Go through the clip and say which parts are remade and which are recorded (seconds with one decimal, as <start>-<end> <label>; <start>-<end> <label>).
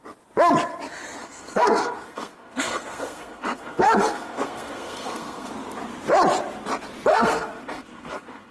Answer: 0.0-1.2 recorded; 1.2-5.5 remade; 5.5-7.1 recorded; 7.1-8.5 remade